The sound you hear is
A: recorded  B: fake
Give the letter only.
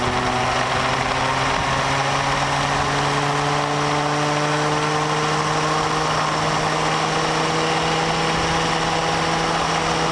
A